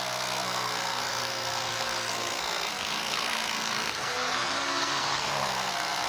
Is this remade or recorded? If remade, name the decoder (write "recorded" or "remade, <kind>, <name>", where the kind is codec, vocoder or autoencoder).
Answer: remade, codec, SNAC